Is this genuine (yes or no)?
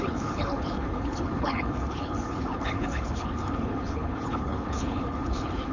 no